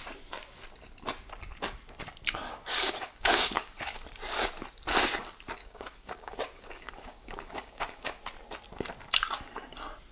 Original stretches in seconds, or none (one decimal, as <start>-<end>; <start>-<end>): 0.0-2.5; 4.0-5.6; 8.2-10.1